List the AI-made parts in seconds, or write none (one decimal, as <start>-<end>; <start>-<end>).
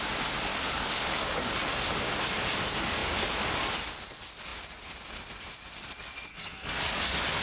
0.5-1.5; 6.3-7.0